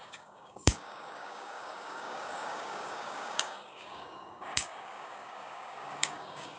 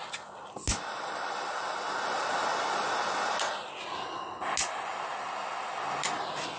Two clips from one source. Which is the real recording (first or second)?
second